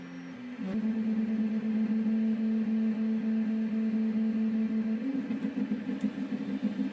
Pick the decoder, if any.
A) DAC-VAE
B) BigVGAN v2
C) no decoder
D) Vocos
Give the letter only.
C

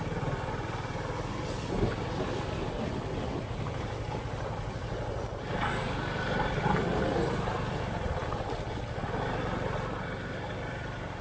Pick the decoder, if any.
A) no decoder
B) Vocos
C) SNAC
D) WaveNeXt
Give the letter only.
A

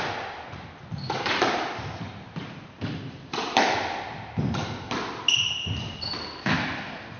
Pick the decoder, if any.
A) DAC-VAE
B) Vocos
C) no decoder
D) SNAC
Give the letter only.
C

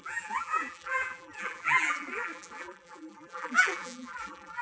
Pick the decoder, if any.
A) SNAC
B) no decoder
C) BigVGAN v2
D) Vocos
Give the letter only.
C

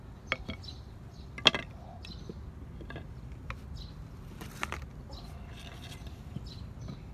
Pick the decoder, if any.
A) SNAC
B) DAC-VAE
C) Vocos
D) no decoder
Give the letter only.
D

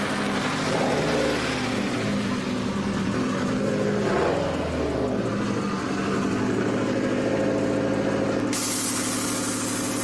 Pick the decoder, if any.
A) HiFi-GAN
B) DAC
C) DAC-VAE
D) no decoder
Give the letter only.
D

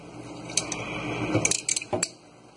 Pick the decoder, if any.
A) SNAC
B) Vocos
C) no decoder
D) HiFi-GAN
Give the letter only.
C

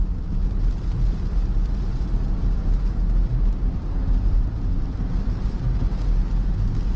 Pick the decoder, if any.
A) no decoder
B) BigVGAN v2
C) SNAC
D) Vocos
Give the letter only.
A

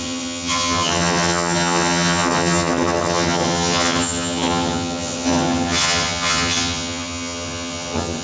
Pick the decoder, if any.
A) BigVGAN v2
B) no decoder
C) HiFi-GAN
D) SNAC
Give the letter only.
C